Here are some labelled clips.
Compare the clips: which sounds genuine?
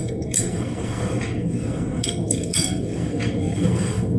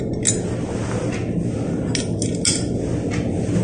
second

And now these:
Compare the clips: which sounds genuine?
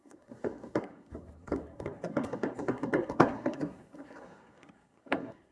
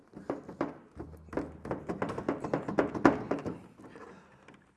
second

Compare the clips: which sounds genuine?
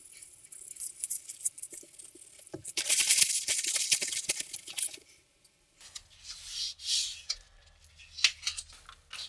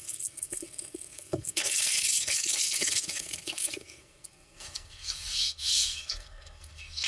first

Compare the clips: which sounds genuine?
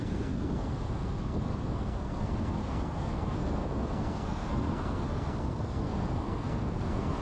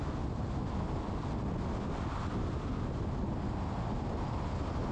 second